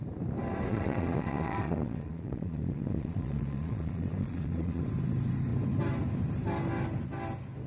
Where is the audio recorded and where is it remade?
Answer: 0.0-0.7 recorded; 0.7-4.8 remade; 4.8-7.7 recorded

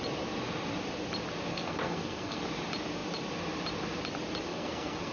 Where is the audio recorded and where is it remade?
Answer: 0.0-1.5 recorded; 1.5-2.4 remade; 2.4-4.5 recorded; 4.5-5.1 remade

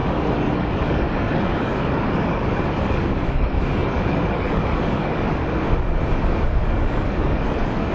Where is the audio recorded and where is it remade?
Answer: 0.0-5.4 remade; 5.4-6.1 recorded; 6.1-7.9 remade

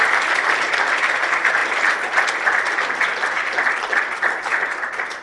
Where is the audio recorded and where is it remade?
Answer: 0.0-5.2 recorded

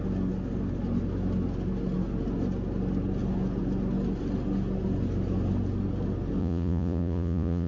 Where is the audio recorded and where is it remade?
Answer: 0.0-6.4 recorded; 6.4-7.7 remade

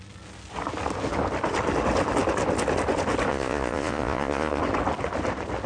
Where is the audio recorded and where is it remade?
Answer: 0.0-3.3 recorded; 3.3-4.6 remade; 4.6-5.7 recorded

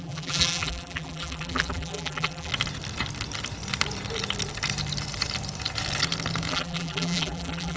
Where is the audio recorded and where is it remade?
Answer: 0.0-2.5 remade; 2.5-6.5 recorded; 6.5-7.8 remade

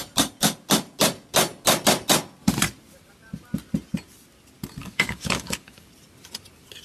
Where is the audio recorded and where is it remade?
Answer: 0.0-4.8 recorded; 4.8-5.9 remade; 5.9-6.8 recorded